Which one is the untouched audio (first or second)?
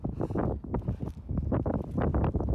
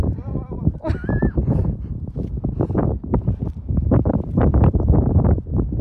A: first